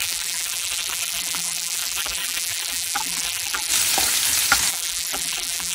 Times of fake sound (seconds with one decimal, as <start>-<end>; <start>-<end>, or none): 0.0-3.7; 4.7-5.7